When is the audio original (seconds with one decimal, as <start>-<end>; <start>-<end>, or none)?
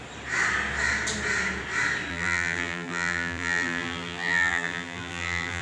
0.0-2.1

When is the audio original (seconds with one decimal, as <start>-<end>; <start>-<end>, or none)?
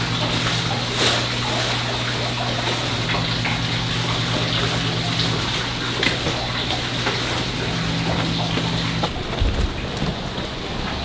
0.0-10.1; 10.6-11.0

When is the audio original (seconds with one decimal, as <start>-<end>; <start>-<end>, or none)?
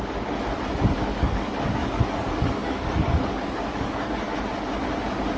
0.0-1.1; 4.3-5.4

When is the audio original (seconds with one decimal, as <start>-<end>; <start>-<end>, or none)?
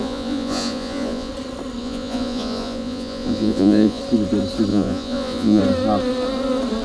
1.3-1.8; 4.0-4.7; 5.6-6.8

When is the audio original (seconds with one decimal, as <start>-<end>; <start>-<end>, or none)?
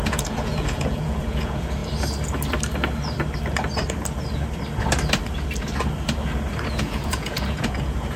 1.8-6.7